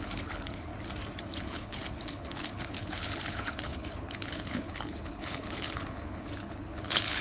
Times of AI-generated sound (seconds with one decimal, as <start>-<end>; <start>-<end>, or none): 0.0-0.7; 1.2-7.2